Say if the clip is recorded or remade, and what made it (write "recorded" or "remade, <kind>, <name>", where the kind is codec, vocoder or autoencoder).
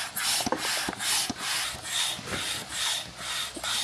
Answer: recorded